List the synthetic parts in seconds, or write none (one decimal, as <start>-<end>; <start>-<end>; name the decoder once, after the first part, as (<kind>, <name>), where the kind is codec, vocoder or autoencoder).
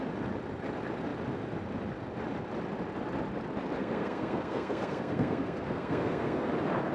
3.8-6.5 (codec, SNAC)